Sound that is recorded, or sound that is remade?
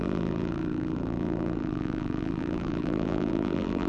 remade